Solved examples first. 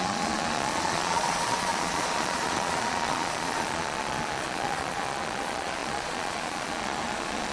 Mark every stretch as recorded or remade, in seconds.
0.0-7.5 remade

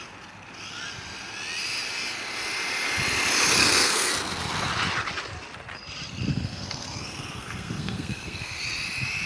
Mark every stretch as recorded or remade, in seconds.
0.0-3.6 recorded; 3.6-4.1 remade; 4.1-6.3 recorded; 6.3-8.6 remade; 8.6-9.3 recorded

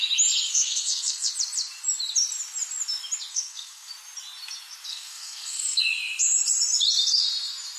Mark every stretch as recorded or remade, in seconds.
0.0-0.5 recorded; 0.5-1.3 remade; 1.3-3.3 recorded; 3.3-3.9 remade; 3.9-4.9 recorded; 4.9-5.8 remade; 5.8-7.8 recorded